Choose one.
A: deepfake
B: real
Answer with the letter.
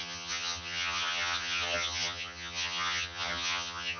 A